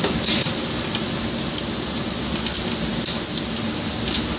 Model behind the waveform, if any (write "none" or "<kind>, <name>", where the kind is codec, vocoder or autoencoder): none